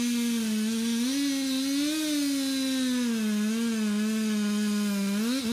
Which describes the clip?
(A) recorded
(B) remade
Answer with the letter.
A